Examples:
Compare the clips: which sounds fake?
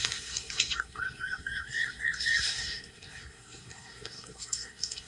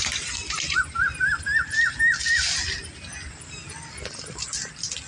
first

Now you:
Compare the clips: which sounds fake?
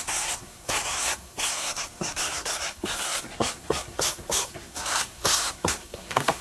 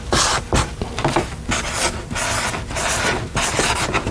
first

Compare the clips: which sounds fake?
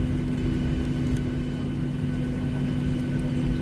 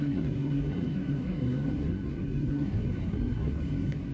second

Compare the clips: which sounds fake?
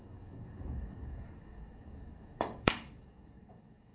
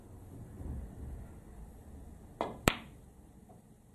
first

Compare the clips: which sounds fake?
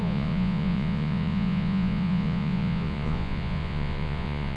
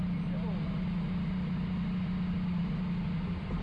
first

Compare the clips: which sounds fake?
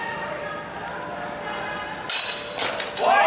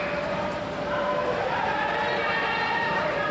second